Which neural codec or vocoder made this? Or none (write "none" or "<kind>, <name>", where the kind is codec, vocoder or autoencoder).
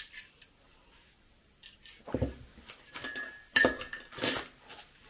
none